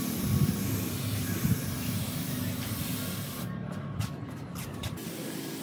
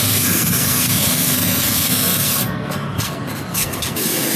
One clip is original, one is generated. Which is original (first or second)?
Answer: first